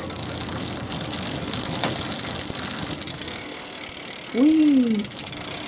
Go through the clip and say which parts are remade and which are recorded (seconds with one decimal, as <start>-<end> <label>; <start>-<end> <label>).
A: 0.0-3.1 recorded; 3.1-3.8 remade; 3.8-5.7 recorded